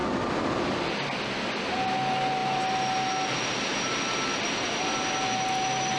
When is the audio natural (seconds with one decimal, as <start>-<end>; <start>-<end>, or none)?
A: 0.0-6.0